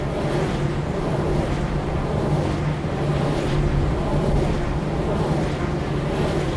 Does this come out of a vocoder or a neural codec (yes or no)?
no